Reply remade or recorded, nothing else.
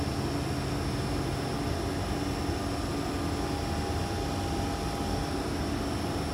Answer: recorded